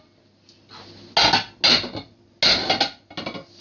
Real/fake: real